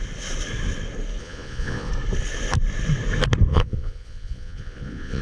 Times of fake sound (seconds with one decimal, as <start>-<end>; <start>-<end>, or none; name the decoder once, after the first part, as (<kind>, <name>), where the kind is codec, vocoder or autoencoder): 1.2-1.9 (vocoder, Vocos); 3.5-5.2